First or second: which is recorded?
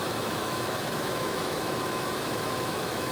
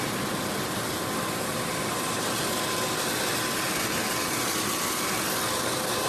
second